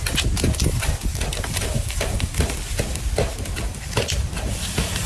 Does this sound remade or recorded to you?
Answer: recorded